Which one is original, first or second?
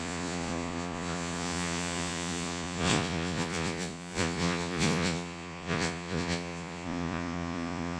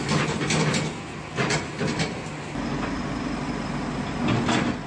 second